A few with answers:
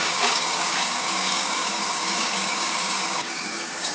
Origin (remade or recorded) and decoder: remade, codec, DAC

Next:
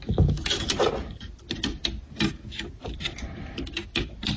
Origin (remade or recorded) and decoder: recorded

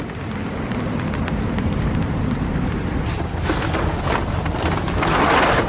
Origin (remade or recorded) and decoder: recorded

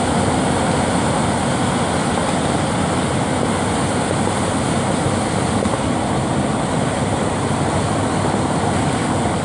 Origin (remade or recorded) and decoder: recorded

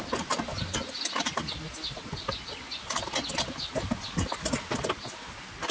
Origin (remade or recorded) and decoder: recorded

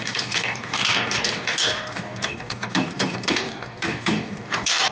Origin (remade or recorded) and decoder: remade, codec, DAC